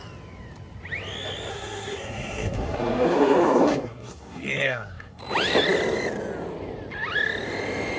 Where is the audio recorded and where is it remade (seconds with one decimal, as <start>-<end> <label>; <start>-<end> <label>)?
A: 0.0-1.5 recorded; 1.5-5.2 remade; 5.2-8.0 recorded